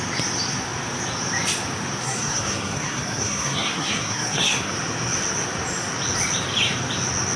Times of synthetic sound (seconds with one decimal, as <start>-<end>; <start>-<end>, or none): 2.0-4.7